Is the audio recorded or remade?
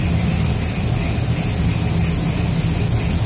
recorded